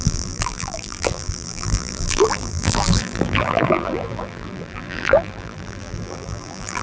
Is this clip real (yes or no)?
no